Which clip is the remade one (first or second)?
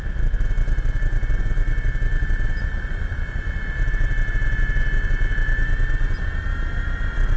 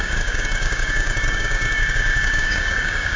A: second